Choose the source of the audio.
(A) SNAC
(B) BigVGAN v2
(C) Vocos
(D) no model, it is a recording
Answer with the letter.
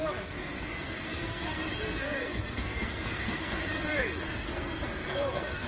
A